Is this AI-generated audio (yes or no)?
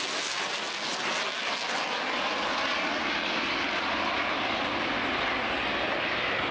no